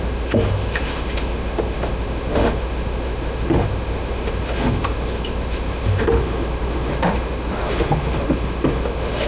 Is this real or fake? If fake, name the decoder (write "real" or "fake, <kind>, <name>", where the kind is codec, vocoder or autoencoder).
fake, autoencoder, DAC-VAE